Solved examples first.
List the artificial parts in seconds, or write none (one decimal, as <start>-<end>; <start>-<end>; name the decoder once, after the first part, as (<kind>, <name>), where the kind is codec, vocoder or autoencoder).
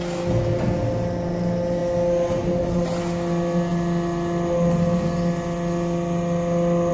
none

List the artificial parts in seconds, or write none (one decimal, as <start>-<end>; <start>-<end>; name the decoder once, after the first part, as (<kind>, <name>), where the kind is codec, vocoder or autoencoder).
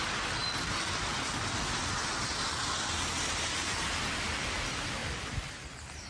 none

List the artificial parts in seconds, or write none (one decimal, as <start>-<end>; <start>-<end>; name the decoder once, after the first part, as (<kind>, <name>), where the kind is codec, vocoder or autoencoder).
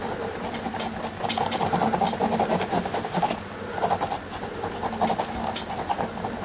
2.7-3.3 (autoencoder, DAC-VAE)